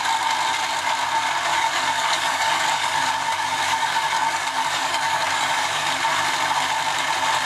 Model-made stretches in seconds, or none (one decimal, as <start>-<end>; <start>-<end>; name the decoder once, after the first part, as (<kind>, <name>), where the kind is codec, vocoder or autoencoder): 1.5-5.9 (codec, DAC)